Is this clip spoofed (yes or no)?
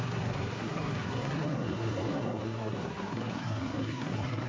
yes